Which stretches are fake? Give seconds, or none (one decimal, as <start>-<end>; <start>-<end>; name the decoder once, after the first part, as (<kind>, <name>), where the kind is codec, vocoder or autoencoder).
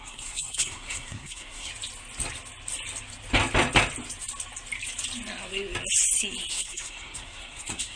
0.0-1.7 (codec, SNAC); 6.5-8.0